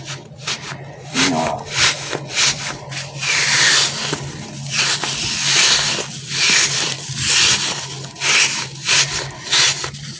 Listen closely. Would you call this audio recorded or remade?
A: recorded